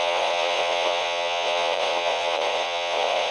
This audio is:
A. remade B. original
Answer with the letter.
A